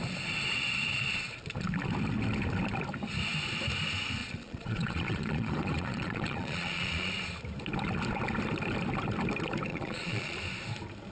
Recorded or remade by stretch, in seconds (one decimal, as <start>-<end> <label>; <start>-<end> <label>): 0.0-4.2 recorded; 4.2-7.1 remade; 7.1-9.7 recorded; 9.7-10.4 remade; 10.4-11.1 recorded